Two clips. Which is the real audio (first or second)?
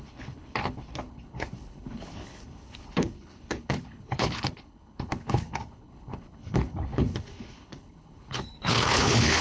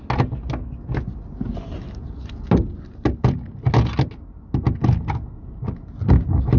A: second